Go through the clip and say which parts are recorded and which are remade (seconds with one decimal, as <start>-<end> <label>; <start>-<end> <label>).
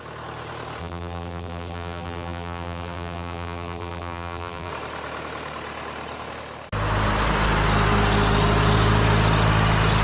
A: 0.0-0.8 recorded; 0.8-4.7 remade; 4.7-10.0 recorded